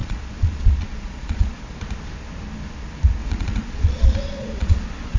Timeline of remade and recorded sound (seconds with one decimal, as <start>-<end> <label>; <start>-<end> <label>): 0.0-1.6 remade; 1.6-3.2 recorded; 3.2-5.2 remade